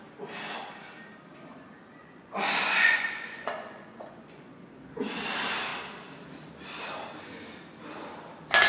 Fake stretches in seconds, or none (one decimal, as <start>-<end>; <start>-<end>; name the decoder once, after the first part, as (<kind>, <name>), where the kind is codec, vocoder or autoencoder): 2.0-4.6 (vocoder, Vocos)